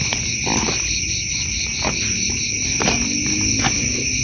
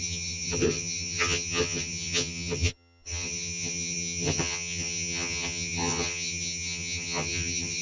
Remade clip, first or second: second